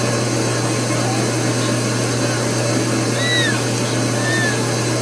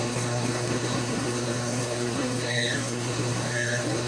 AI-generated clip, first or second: second